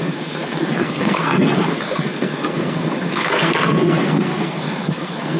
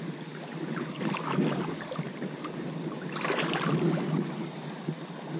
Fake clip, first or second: first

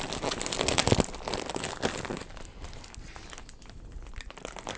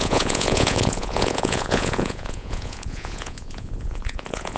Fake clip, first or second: second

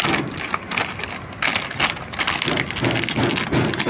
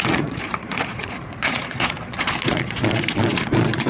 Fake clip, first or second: second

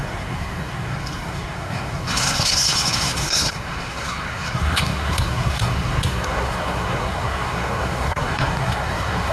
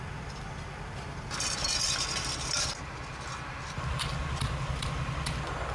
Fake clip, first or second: first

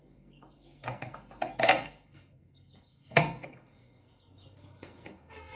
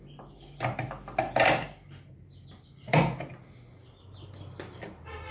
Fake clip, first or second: first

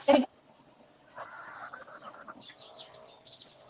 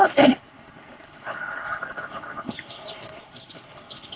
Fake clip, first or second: second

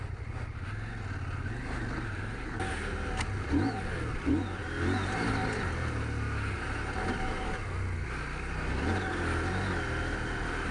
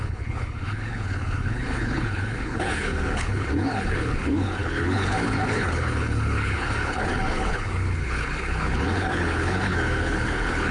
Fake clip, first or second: second